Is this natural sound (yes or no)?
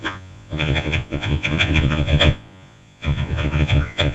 no